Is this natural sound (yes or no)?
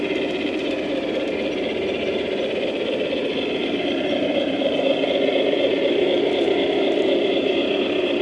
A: no